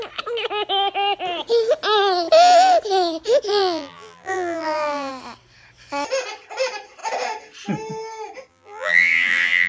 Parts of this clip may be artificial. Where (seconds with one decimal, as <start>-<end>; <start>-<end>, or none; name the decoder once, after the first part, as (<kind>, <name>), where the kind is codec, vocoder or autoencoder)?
3.5-5.1 (vocoder, BigVGAN v2); 8.5-9.7